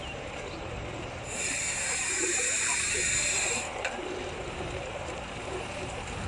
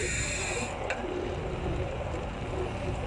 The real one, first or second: second